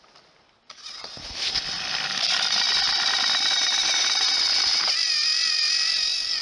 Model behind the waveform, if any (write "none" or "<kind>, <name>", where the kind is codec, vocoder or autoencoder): none